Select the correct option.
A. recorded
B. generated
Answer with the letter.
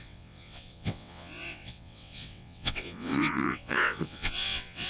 B